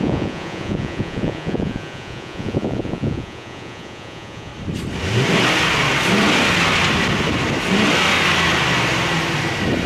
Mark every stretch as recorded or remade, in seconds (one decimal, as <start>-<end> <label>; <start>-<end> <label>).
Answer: 0.0-4.5 remade; 4.5-9.9 recorded